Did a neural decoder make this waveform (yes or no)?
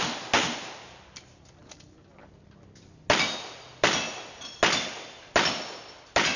no